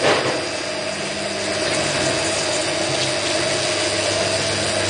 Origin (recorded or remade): recorded